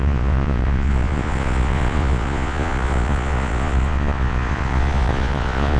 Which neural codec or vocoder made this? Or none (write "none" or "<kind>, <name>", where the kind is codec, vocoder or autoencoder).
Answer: vocoder, Vocos